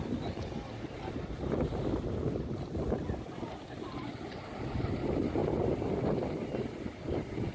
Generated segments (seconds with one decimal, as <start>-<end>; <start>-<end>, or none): 0.0-7.5